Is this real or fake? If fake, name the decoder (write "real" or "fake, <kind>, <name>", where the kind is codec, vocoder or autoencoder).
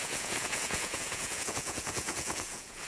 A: fake, vocoder, Vocos